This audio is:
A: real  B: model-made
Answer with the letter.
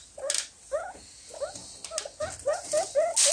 A